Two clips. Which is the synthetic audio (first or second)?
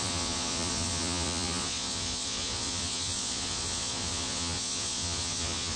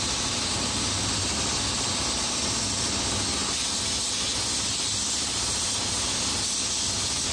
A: first